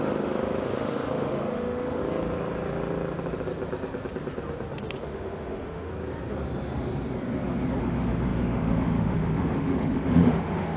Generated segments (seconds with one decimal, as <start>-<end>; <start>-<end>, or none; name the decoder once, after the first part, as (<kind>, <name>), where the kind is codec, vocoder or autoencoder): 0.0-2.0 (autoencoder, DAC-VAE); 5.0-5.9; 7.8-10.8